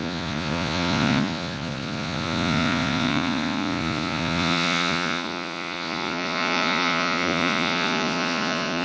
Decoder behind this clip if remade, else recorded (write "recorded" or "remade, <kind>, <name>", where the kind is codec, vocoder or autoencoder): remade, vocoder, Vocos